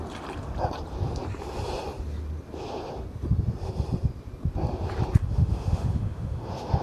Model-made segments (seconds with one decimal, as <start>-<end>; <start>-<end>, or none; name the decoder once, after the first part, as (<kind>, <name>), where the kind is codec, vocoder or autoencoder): 5.2-6.8 (autoencoder, DAC-VAE)